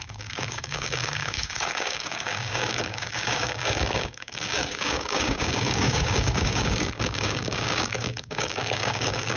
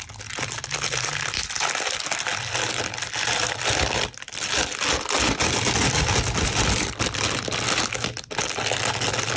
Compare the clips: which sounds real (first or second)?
second